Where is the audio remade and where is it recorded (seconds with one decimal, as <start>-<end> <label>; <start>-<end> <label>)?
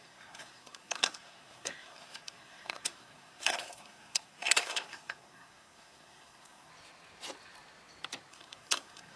0.0-6.7 remade; 6.7-8.3 recorded; 8.3-9.2 remade